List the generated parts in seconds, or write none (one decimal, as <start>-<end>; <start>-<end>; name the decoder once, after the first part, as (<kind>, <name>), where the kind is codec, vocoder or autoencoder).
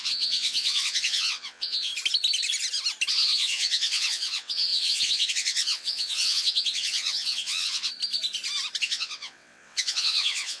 0.0-1.9 (vocoder, WaveNeXt); 3.1-7.9; 8.8-10.6